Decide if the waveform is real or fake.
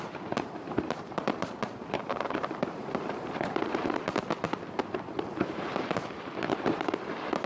fake